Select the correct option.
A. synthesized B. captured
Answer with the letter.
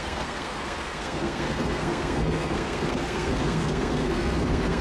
A